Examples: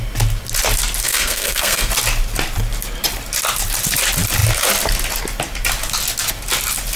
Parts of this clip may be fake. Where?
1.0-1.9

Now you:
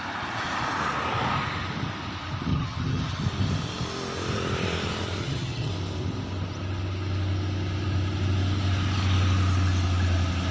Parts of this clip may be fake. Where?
2.5-3.2; 5.2-5.7

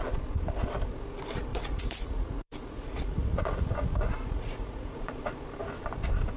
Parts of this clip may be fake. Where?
1.5-5.3

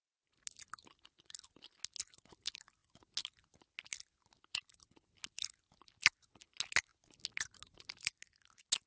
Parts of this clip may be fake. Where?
none

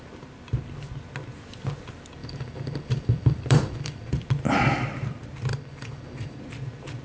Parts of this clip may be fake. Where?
2.2-4.1; 5.5-6.4

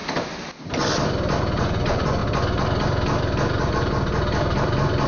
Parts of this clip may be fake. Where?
1.6-2.2

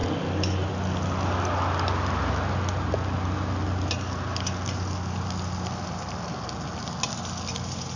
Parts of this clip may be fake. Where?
none

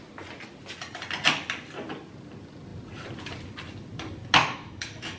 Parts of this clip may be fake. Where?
4.4-5.2